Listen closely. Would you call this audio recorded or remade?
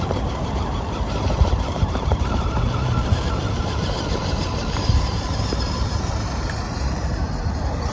remade